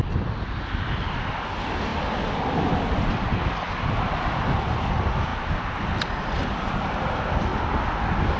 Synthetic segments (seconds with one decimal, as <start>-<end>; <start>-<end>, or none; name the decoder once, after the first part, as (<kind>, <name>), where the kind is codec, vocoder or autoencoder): none